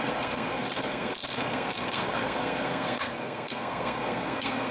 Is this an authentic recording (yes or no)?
no